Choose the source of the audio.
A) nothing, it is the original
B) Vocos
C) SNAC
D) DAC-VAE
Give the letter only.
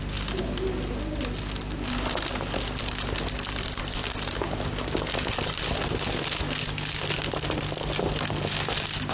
A